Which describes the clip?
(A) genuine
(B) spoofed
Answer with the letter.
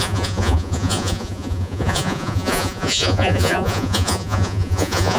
B